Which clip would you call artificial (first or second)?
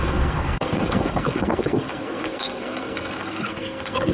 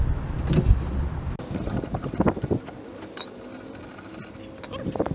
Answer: first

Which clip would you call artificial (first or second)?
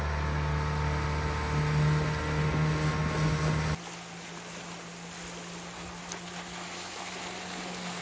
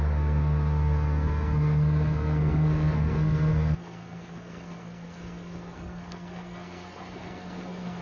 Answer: second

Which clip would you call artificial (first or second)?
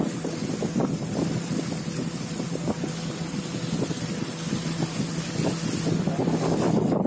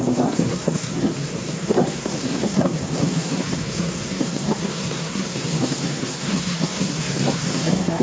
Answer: second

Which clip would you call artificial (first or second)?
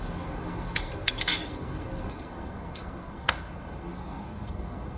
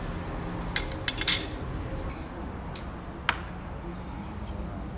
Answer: first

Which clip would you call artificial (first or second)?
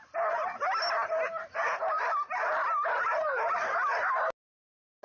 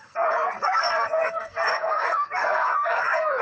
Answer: second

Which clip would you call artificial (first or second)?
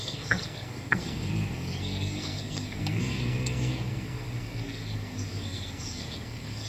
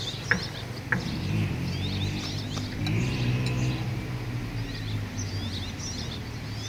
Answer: first